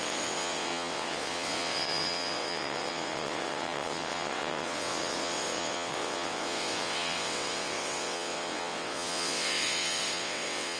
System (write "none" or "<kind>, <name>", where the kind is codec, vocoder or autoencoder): vocoder, WaveNeXt